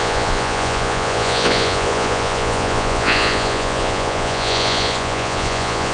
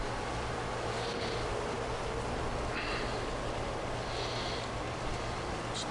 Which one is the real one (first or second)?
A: second